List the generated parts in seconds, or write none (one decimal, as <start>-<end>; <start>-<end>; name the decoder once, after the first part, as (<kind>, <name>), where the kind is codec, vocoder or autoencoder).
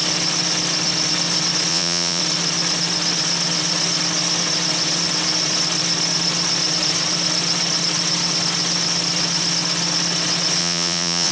1.7-2.2 (vocoder, Vocos); 10.6-11.3